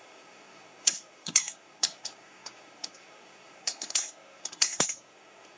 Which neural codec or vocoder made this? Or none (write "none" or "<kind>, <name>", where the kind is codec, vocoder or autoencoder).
codec, SNAC